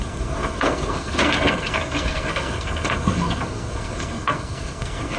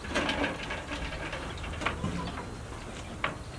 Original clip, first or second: second